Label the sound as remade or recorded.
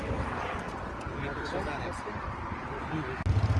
recorded